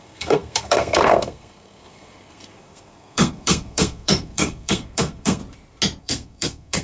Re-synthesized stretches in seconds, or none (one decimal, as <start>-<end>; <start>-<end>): 0.0-5.4; 6.0-6.8